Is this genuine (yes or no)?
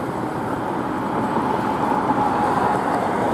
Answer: yes